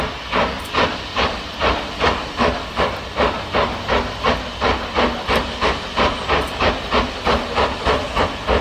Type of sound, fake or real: real